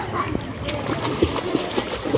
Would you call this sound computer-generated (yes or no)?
no